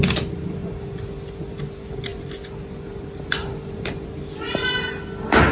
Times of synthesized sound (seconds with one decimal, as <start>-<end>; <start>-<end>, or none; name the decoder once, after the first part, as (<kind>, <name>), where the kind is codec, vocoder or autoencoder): none

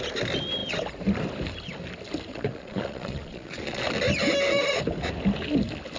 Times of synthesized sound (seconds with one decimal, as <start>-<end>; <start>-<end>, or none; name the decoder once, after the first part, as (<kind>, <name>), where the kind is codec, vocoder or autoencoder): 2.3-3.8 (vocoder, Vocos)

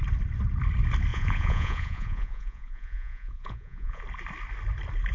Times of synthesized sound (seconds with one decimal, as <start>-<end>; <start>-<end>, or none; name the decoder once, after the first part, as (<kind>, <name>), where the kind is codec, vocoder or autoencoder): 1.1-4.0 (vocoder, Vocos)

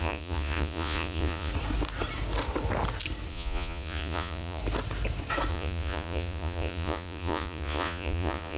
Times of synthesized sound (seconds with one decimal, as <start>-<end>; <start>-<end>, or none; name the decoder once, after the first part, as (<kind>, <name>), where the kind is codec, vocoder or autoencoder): 0.0-1.5 (vocoder, Vocos); 3.3-4.6; 5.5-8.6